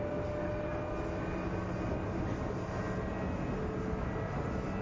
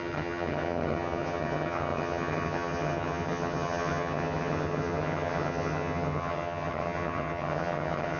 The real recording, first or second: first